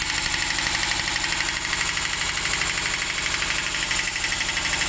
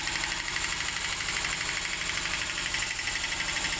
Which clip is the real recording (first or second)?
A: first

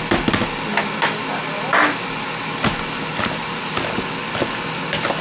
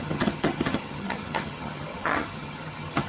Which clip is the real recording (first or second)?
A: first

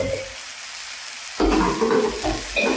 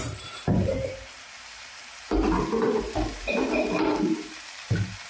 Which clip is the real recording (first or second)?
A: first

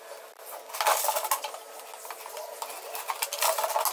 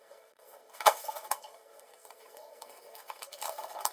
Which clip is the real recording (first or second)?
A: first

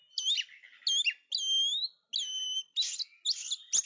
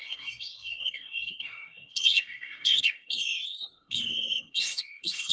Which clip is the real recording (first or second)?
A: first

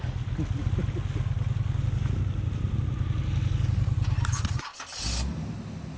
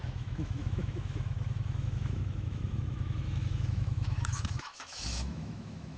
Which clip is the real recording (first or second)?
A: first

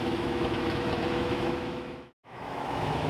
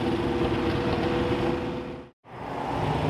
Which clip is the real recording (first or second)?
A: second